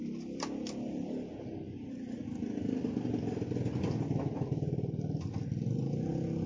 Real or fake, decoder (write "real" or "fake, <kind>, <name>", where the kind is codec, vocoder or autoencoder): real